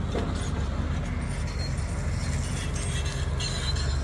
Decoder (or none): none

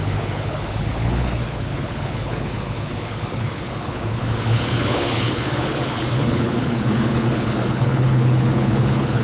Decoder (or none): codec, HILCodec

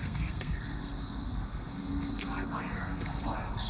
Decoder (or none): codec, SNAC